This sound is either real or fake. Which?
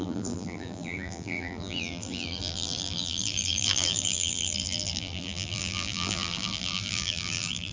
fake